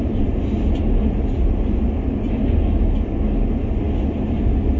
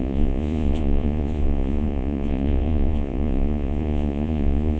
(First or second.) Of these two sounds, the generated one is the second